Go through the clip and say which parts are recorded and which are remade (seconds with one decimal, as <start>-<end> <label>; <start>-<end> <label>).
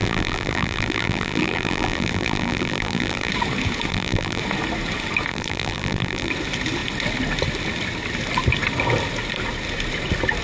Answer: 0.0-3.3 remade; 3.3-3.9 recorded; 3.9-4.4 remade; 4.4-5.3 recorded; 5.3-6.3 remade; 6.3-10.4 recorded